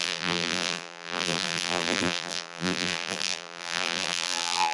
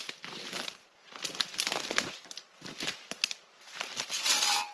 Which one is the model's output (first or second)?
first